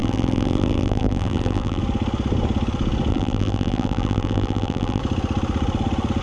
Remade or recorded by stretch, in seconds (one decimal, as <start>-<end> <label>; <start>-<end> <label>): 0.0-1.8 remade; 1.8-3.1 recorded; 3.1-5.0 remade; 5.0-6.2 recorded